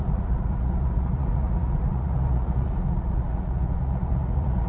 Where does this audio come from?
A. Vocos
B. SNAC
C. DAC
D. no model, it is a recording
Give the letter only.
A